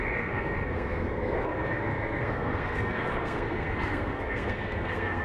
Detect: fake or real fake